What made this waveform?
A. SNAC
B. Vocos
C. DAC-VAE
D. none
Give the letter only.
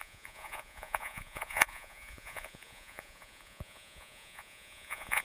B